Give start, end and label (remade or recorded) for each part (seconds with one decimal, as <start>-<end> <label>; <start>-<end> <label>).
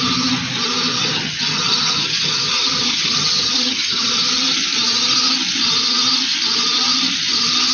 0.0-0.9 recorded; 0.9-4.1 remade; 4.1-7.7 recorded